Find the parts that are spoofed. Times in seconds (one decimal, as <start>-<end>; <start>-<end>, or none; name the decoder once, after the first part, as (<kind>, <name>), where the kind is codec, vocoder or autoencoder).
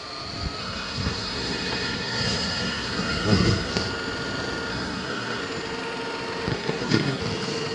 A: 0.6-3.7 (codec, SNAC); 4.7-5.4; 6.5-7.2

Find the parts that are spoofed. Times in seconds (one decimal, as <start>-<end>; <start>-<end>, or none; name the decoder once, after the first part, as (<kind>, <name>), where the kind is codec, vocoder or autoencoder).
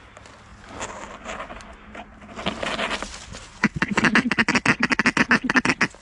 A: none